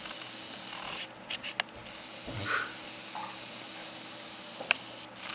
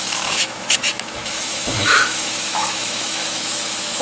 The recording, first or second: first